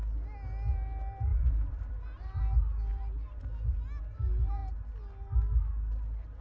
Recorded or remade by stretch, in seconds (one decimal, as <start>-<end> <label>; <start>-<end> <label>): 0.0-1.3 recorded; 1.3-2.4 remade; 2.4-2.9 recorded; 2.9-3.4 remade; 3.4-6.4 recorded